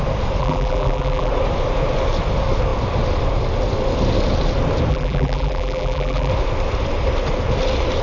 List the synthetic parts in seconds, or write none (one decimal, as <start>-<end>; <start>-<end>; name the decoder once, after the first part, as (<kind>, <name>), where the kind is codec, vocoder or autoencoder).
0.4-1.3 (vocoder, BigVGAN v2); 4.9-6.3